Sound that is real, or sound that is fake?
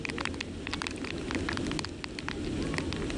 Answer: real